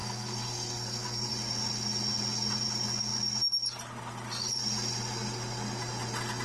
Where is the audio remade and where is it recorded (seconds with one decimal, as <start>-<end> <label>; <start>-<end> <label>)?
0.0-1.3 remade; 1.3-6.4 recorded